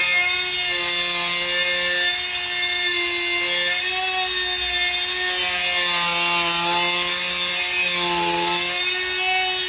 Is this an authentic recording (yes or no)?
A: yes